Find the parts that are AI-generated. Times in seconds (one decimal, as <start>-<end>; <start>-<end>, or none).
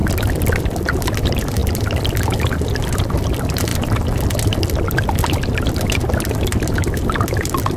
0.6-3.7; 6.4-7.8